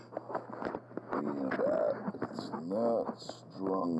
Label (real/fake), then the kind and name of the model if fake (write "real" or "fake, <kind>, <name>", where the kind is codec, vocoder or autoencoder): real